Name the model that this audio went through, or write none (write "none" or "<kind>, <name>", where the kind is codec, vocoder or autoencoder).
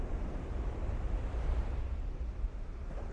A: none